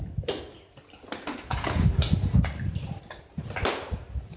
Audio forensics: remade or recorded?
recorded